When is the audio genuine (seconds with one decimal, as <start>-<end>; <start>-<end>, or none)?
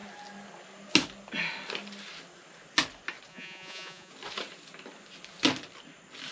0.0-3.3; 4.1-6.3